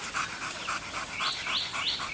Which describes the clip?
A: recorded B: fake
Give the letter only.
A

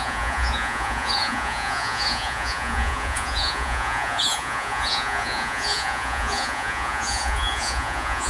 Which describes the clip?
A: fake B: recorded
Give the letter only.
A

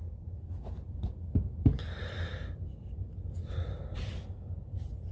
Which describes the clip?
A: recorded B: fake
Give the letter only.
A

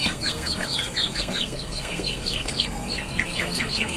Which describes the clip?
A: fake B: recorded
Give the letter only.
A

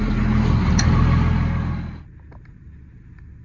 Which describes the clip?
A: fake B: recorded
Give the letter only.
B